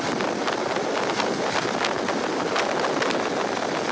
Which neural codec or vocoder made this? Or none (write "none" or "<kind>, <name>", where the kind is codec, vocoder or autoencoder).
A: none